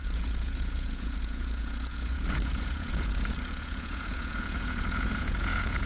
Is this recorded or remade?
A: remade